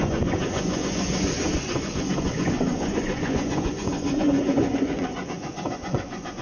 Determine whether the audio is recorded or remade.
remade